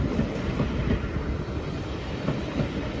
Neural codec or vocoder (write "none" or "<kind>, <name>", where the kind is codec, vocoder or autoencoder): none